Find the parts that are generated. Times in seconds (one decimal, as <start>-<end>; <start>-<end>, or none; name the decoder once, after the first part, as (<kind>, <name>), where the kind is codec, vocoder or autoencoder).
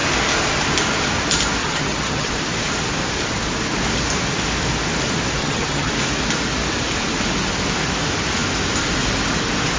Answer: 1.6-2.3 (vocoder, HiFi-GAN); 5.4-5.9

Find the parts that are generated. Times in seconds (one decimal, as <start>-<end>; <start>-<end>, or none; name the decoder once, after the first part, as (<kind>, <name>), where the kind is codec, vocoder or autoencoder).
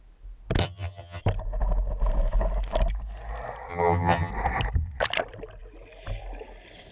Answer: 0.6-1.2 (vocoder, HiFi-GAN); 3.7-4.3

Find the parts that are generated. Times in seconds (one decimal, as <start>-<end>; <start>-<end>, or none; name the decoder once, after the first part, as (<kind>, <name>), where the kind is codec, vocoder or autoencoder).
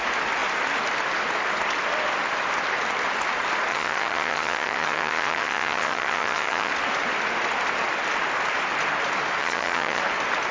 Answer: 3.7-6.7 (vocoder, HiFi-GAN); 9.4-10.0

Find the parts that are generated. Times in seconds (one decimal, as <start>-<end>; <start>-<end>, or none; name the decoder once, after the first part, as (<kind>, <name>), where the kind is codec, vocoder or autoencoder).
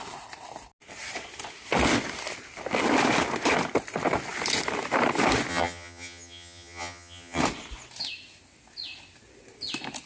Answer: 5.5-7.4 (vocoder, HiFi-GAN)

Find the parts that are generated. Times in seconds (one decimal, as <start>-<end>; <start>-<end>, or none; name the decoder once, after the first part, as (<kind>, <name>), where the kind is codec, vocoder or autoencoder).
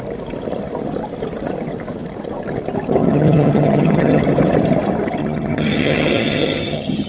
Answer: 3.0-4.2 (vocoder, HiFi-GAN); 5.2-7.1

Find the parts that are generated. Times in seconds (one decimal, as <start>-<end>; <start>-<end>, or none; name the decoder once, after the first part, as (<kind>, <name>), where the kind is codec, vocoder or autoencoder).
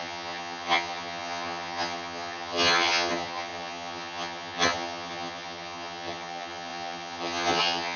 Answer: 0.0-8.0 (vocoder, HiFi-GAN)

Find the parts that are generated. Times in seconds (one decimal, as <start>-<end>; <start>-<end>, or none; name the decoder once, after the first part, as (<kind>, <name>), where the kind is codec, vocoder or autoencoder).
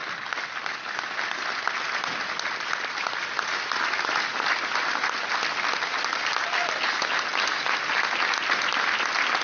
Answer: none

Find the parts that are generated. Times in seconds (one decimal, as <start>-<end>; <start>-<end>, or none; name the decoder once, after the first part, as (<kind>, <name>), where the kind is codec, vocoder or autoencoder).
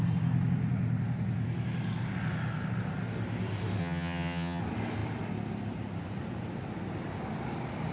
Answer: 3.8-4.6 (vocoder, HiFi-GAN)